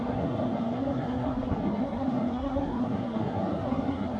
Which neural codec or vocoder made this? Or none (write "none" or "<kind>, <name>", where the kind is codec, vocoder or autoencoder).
codec, SNAC